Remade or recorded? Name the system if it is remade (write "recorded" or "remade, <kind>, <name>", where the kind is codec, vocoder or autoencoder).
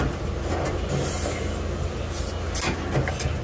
recorded